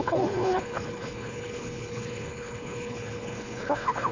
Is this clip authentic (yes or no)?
no